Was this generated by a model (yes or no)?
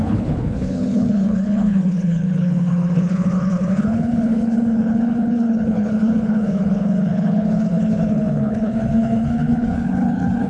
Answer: yes